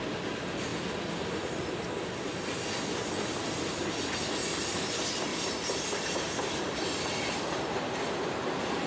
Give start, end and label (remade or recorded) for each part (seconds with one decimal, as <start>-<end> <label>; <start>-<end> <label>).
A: 0.0-5.3 recorded; 5.3-6.6 remade; 6.6-8.9 recorded